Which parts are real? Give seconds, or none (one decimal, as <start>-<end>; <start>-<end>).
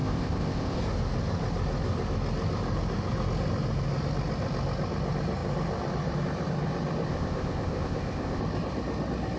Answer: 0.8-7.1; 8.4-9.4